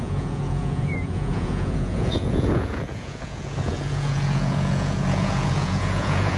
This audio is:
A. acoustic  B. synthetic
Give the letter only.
B